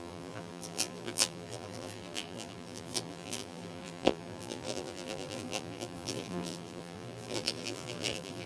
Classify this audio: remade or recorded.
remade